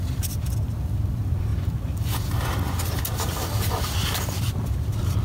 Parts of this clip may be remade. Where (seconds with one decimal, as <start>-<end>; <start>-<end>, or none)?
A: none